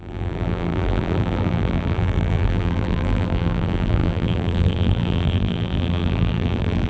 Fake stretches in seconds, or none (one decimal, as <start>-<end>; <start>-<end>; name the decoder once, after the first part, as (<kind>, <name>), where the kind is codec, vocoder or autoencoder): 0.0-6.9 (vocoder, BigVGAN v2)